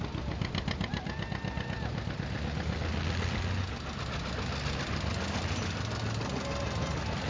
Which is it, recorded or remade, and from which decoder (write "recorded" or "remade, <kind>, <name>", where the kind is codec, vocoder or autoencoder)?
recorded